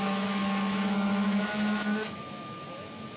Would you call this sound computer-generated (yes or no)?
yes